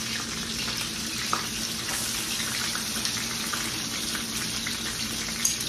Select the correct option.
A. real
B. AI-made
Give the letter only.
A